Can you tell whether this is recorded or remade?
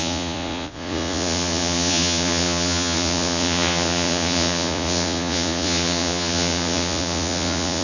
remade